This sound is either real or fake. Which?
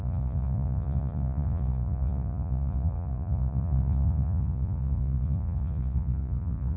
fake